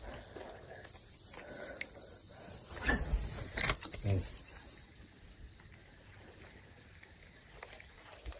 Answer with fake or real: real